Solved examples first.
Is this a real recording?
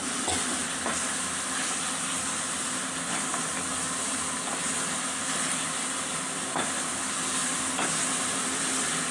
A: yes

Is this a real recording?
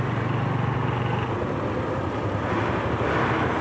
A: yes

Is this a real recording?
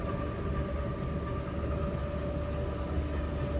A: yes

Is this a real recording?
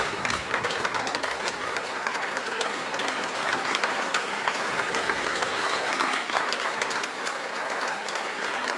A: no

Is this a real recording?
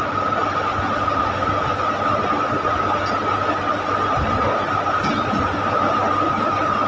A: yes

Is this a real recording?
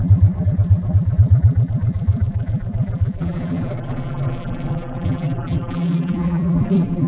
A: no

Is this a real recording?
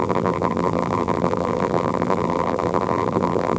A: no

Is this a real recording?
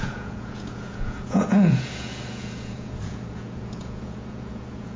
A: no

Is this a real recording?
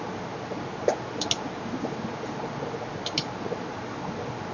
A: yes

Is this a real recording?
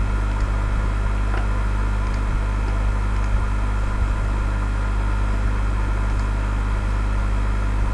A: yes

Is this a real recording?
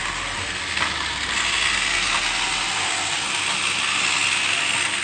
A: yes